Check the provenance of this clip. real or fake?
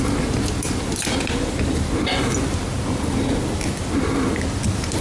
real